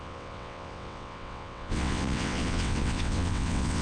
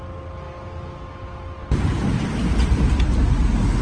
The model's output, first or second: first